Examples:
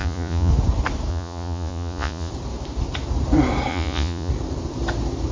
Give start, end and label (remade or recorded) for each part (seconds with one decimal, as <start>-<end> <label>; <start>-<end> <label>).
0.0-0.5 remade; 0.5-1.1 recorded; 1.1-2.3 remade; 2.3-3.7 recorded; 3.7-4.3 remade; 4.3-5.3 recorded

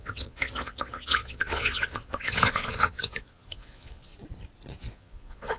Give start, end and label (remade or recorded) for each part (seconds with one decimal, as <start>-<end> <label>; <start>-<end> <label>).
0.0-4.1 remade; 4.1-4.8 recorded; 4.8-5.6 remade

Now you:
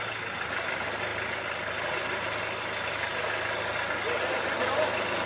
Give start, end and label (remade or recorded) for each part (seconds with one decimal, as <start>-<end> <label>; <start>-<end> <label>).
0.0-5.3 recorded

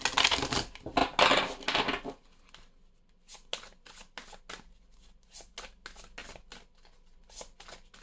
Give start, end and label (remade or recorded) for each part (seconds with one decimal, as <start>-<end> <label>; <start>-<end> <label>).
0.0-8.0 recorded